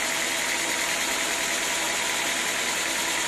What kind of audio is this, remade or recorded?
recorded